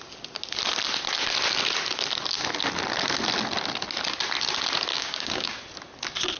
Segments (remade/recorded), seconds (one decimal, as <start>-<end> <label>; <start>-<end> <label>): 0.0-4.9 recorded; 4.9-5.6 remade; 5.6-6.4 recorded

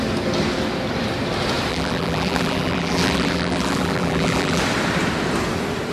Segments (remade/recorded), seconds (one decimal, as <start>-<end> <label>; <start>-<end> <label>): 0.0-1.7 recorded; 1.7-4.6 remade; 4.6-5.9 recorded

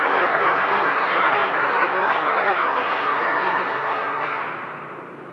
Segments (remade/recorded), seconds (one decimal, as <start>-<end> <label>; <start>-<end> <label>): 0.0-4.4 remade; 4.4-5.3 recorded

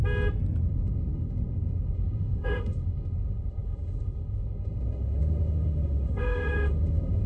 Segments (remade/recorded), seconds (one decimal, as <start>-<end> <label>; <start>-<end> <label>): 0.0-0.6 recorded; 0.6-7.3 remade

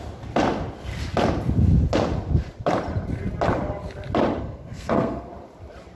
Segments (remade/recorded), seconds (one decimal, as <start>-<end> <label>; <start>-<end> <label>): 0.0-4.4 recorded; 4.4-5.3 remade; 5.3-5.9 recorded